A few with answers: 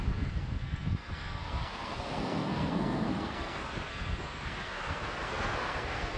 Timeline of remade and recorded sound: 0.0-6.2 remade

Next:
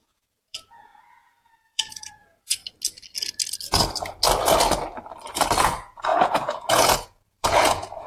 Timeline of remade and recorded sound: 0.0-2.6 remade; 2.6-5.6 recorded; 5.6-8.1 remade

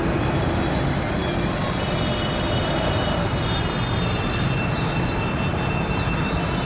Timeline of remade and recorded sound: 0.0-6.7 recorded

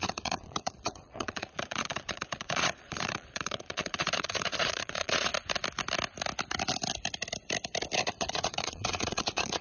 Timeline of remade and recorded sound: 0.0-5.3 remade; 5.3-8.0 recorded; 8.0-9.6 remade

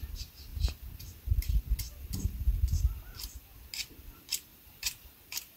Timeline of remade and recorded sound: 0.0-4.5 recorded; 4.5-5.6 remade

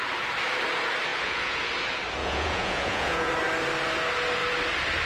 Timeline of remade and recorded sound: 0.0-1.1 recorded; 1.1-1.7 remade; 1.7-2.2 recorded; 2.2-3.3 remade; 3.3-5.1 recorded

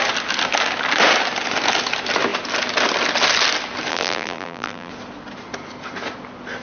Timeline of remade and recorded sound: 0.0-3.9 recorded; 3.9-4.9 remade; 4.9-6.6 recorded

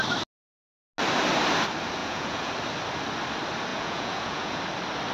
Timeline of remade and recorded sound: 0.0-2.0 recorded; 2.0-2.5 remade; 2.5-3.7 recorded; 3.7-4.6 remade; 4.6-5.1 recorded